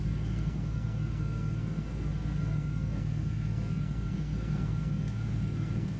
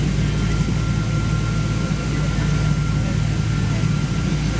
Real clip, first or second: second